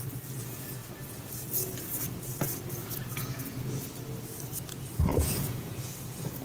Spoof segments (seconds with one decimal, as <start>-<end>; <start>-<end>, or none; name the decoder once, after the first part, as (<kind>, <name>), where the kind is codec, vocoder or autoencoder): 3.0-3.8 (vocoder, Vocos); 5.1-5.9